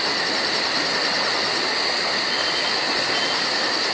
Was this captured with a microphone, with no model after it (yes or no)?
yes